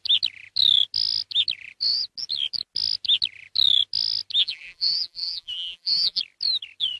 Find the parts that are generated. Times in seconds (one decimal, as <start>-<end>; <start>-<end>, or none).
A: 4.4-6.2